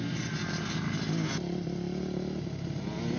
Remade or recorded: recorded